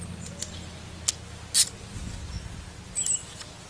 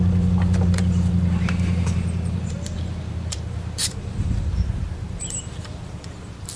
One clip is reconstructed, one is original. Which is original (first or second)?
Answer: first